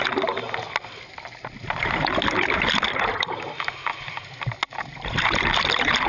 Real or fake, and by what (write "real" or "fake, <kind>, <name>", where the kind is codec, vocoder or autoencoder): real